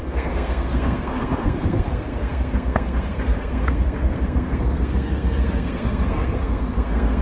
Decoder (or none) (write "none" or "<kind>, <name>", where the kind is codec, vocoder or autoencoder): codec, SNAC